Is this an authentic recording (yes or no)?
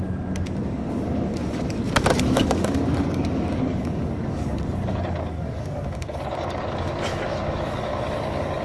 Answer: no